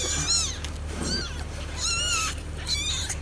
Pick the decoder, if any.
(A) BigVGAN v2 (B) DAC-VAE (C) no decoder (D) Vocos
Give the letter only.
A